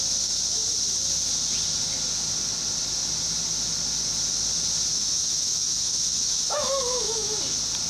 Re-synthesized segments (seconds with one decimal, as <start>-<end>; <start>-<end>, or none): 4.9-7.4